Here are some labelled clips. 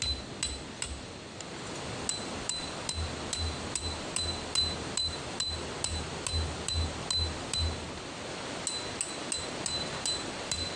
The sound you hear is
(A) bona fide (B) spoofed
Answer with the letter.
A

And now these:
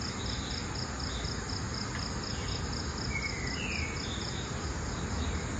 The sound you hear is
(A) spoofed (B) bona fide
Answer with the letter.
B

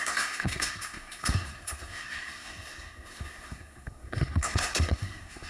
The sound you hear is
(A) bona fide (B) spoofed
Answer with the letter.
B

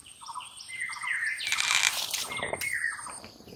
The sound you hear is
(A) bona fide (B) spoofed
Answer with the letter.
B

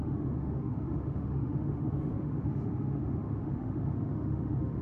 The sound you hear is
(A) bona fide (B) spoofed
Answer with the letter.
B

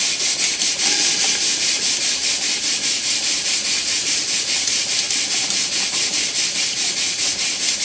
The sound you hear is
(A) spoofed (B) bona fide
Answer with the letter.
B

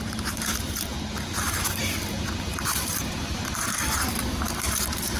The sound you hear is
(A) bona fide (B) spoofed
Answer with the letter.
B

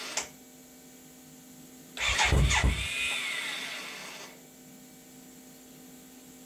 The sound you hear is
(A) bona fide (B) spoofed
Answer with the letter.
A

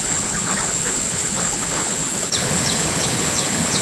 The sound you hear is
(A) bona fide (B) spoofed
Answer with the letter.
B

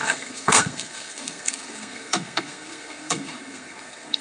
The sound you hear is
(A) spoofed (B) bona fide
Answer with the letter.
A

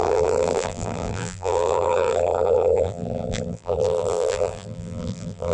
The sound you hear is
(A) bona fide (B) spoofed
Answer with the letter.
B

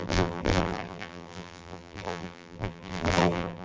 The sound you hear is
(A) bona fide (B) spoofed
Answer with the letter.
B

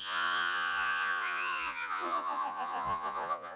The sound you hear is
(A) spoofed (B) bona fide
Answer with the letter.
A